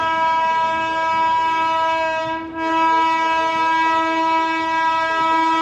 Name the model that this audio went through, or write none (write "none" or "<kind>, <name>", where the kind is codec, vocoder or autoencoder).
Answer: none